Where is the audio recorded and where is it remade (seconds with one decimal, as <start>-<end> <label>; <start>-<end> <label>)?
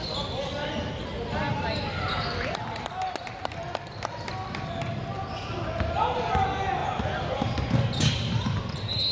0.0-9.1 recorded